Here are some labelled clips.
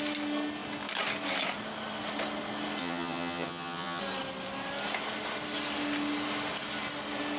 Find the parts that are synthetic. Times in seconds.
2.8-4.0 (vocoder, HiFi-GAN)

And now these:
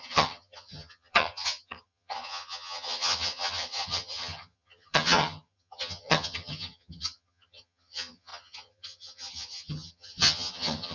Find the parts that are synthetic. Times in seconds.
0.0-10.9 (vocoder, HiFi-GAN)

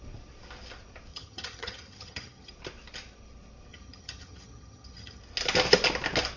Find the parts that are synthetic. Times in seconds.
1.1-2.5 (vocoder, HiFi-GAN); 3.7-5.2